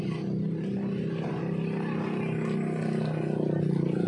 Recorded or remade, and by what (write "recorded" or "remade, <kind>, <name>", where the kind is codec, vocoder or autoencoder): recorded